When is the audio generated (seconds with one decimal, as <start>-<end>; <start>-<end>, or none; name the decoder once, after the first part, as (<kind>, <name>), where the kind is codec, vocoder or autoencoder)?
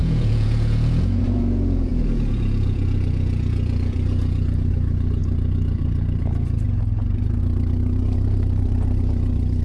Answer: 0.0-9.6 (vocoder, Vocos)